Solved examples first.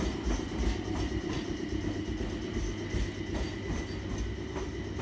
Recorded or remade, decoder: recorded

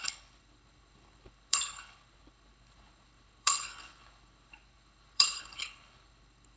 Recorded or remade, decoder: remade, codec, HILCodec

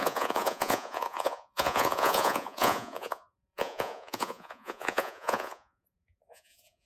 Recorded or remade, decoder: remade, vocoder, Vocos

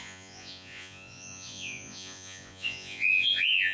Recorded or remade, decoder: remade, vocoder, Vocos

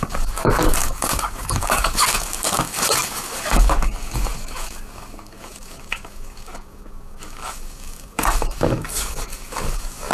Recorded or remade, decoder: remade, codec, DAC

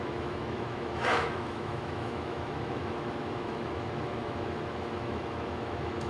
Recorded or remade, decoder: remade, autoencoder, DAC-VAE